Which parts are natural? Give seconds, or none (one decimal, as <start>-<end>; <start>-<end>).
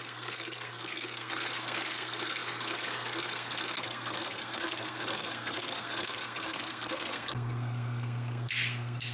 none